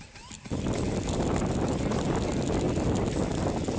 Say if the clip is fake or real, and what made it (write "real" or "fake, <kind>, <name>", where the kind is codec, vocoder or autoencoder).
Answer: real